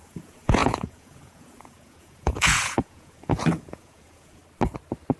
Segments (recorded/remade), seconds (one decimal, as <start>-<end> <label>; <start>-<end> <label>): 0.0-4.4 remade; 4.4-5.2 recorded